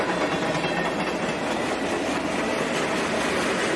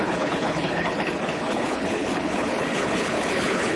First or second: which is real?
first